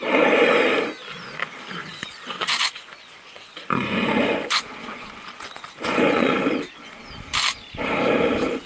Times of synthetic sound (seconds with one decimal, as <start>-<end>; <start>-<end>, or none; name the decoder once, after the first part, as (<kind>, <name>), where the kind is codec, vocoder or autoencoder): 1.8-6.4 (vocoder, Vocos)